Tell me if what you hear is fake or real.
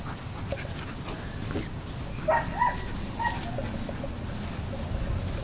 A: real